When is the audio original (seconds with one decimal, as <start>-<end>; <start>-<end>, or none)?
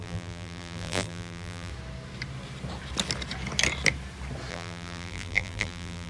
1.7-4.5